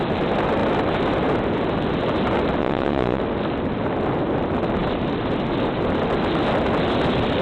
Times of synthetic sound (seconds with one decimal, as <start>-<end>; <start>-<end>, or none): 2.6-3.2